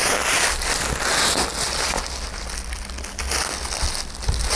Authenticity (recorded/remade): recorded